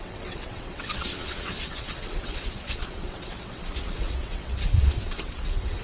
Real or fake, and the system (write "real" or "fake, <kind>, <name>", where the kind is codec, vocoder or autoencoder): fake, vocoder, WaveNeXt